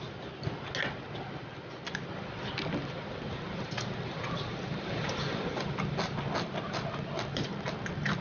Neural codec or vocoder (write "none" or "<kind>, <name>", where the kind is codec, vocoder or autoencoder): none